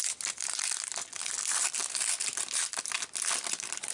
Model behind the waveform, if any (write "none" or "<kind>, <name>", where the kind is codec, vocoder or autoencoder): none